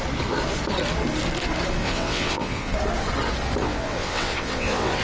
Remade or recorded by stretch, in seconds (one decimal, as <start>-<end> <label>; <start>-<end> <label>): 0.0-1.8 recorded; 1.8-2.7 remade; 2.7-3.6 recorded; 3.6-5.0 remade